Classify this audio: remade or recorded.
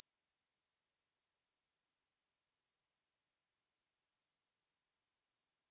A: recorded